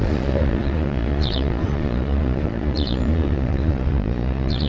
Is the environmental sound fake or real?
fake